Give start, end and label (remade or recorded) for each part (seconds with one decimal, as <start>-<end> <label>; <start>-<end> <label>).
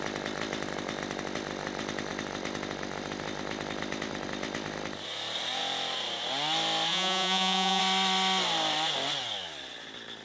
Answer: 0.0-6.9 recorded; 6.9-7.8 remade; 7.8-10.2 recorded